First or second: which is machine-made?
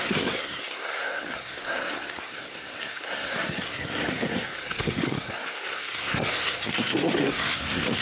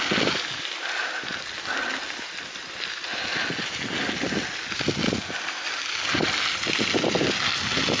first